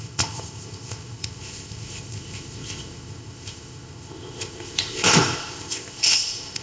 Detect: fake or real fake